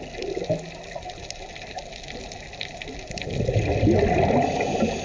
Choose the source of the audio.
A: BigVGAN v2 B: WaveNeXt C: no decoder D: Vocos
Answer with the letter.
C